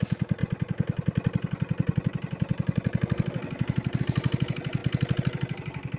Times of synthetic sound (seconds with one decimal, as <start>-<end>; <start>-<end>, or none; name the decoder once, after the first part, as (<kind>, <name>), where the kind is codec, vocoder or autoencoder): none